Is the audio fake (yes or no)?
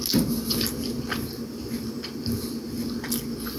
no